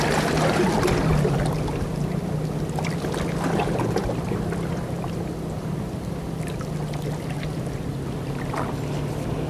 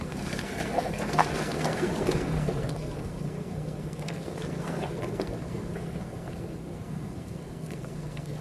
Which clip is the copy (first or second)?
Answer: second